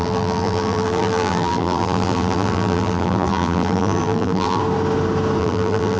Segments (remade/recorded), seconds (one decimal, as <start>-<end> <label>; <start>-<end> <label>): 0.0-4.6 remade; 4.6-5.4 recorded; 5.4-6.0 remade